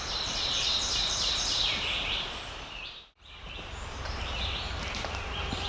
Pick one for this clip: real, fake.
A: fake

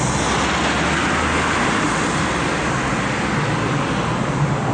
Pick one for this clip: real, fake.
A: real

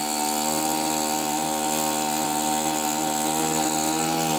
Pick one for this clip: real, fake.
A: real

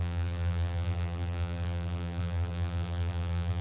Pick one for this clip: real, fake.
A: fake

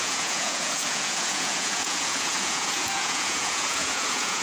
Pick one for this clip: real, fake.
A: fake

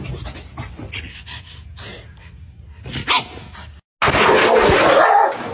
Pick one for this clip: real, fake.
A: real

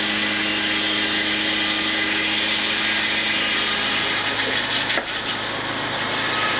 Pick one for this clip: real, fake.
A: real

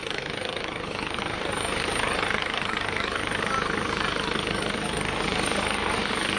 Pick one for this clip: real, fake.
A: fake